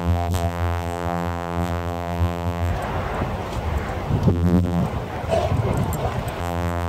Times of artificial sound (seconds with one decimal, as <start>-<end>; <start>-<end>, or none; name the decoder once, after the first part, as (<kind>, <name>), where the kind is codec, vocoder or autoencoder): 0.0-2.7 (vocoder, BigVGAN v2); 4.3-4.8; 6.4-6.9